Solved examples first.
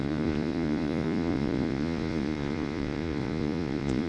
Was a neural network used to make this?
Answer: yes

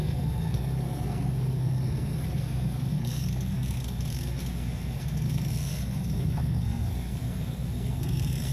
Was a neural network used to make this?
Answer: yes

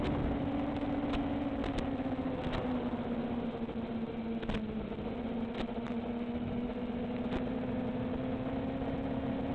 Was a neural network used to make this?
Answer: no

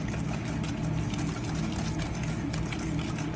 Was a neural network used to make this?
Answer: no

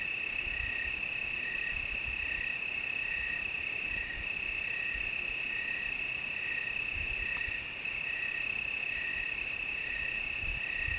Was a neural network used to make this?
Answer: no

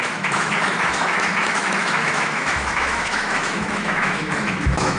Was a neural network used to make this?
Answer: yes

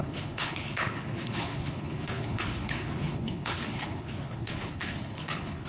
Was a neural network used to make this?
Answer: yes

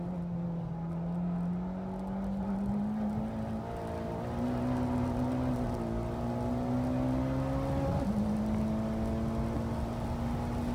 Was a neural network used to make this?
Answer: no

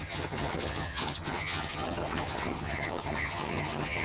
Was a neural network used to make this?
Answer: yes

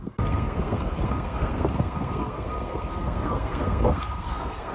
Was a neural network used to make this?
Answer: yes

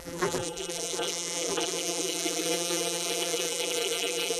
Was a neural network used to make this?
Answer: yes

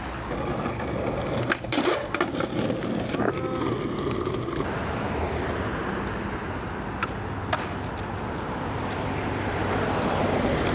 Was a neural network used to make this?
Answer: no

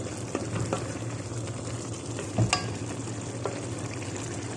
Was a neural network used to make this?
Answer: no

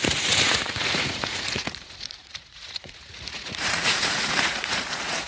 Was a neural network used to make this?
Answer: yes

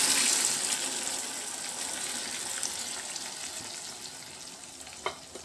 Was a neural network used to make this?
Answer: no